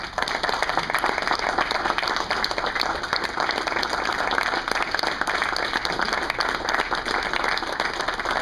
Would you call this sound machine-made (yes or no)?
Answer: no